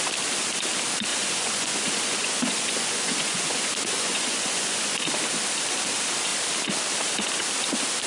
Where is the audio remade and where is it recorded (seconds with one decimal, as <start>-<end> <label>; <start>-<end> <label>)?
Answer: 0.0-1.1 recorded; 1.1-5.0 remade; 5.0-8.1 recorded

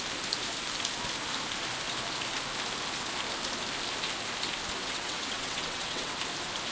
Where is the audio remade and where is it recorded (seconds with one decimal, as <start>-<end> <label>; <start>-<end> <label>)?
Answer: 0.0-4.8 recorded; 4.8-6.1 remade; 6.1-6.7 recorded

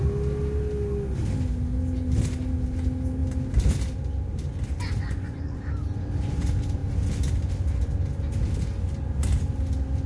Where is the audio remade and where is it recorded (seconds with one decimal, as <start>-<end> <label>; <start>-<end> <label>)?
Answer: 0.0-4.8 recorded; 4.8-5.6 remade; 5.6-10.1 recorded

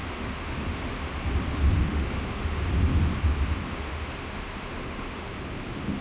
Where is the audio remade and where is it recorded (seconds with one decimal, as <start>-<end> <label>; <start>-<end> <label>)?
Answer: 0.0-1.1 remade; 1.1-1.9 recorded; 1.9-2.6 remade; 2.6-3.7 recorded; 3.7-5.4 remade; 5.4-6.0 recorded